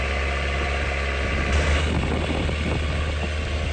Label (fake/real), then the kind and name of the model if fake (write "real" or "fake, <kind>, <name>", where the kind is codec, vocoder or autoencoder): real